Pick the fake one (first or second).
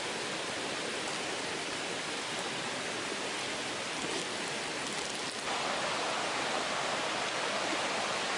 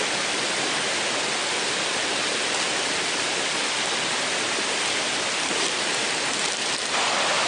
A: second